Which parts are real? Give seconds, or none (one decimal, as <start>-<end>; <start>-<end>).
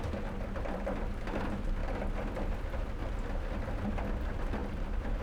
1.8-2.5; 3.0-3.8